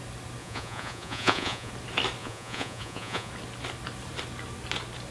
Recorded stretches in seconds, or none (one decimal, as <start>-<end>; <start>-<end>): 0.0-0.4; 1.7-2.2; 3.3-5.1